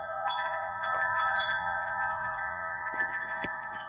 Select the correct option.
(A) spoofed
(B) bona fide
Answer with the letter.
A